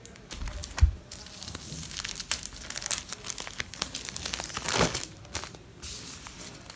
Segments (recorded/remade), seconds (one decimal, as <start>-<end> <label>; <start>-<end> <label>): 0.0-6.8 recorded